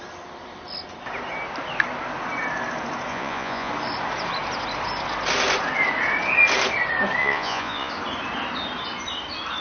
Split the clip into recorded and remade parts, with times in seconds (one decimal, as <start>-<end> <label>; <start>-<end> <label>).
0.0-3.1 recorded; 3.1-3.7 remade; 3.7-7.2 recorded; 7.2-7.9 remade; 7.9-9.6 recorded